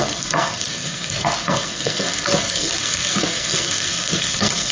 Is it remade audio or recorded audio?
remade